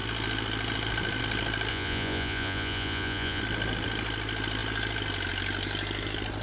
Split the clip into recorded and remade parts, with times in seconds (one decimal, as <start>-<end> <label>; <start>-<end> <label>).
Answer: 0.0-1.7 recorded; 1.7-3.4 remade; 3.4-6.4 recorded